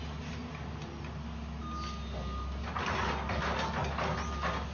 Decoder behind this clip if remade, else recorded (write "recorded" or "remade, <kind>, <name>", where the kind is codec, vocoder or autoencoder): recorded